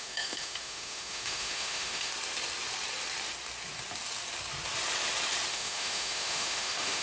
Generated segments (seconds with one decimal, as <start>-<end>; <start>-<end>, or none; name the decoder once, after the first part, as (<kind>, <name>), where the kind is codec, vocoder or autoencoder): 0.0-2.1 (autoencoder, DAC-VAE); 5.5-7.0